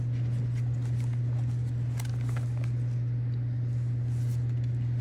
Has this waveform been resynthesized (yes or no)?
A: no